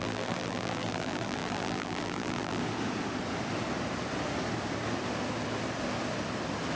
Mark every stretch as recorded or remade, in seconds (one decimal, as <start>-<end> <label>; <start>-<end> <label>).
0.0-2.6 remade; 2.6-6.8 recorded